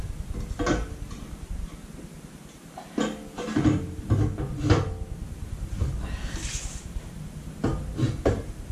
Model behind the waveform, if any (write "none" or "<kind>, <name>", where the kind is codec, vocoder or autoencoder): none